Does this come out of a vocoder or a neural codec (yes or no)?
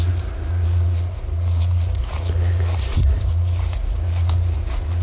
yes